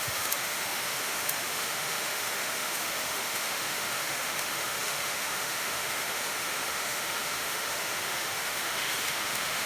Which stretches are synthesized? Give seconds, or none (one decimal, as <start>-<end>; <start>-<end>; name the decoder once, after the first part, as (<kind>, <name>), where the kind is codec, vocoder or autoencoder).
0.0-9.7 (autoencoder, DAC-VAE)